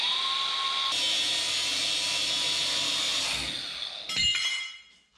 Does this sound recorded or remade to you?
recorded